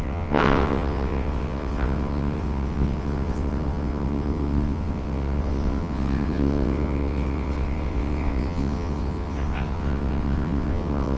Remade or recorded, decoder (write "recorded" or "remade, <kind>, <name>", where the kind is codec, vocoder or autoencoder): remade, vocoder, WaveNeXt